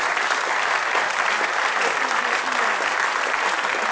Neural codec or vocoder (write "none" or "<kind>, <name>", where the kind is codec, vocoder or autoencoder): vocoder, BigVGAN v2